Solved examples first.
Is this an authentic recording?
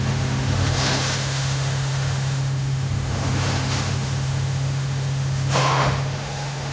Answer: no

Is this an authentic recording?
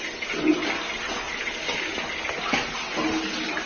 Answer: yes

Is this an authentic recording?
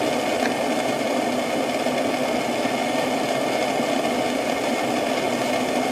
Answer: yes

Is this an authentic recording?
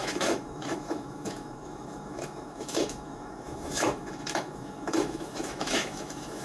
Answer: no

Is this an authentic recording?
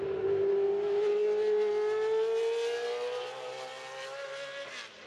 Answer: yes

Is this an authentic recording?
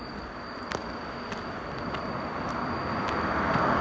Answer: yes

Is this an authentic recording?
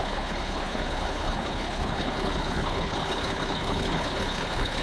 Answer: no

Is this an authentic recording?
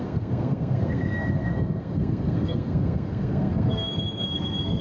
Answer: no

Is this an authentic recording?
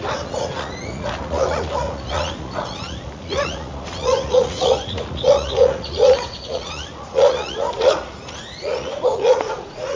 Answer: no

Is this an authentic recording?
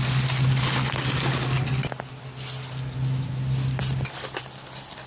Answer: yes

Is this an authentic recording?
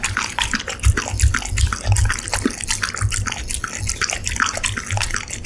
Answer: yes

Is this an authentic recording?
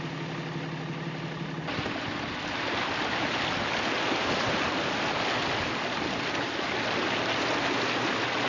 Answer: yes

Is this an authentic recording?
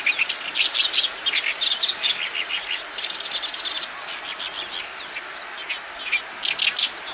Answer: yes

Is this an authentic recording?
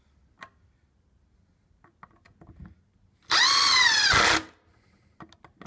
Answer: yes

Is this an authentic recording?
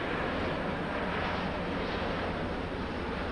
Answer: yes